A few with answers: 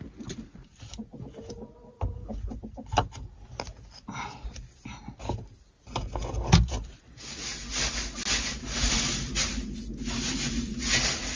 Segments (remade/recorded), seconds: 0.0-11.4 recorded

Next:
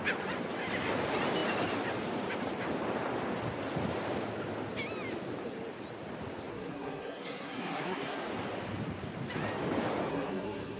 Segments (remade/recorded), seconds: 0.0-6.5 recorded; 6.5-8.3 remade; 8.3-10.1 recorded; 10.1-10.8 remade

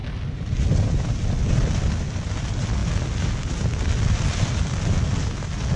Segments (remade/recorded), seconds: 0.0-5.8 recorded

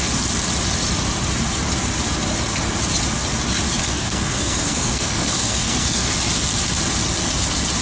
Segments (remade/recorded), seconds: 0.0-3.8 recorded; 3.8-6.1 remade; 6.1-7.8 recorded

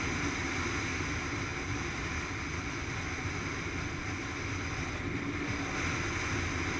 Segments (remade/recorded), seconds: 0.0-6.8 recorded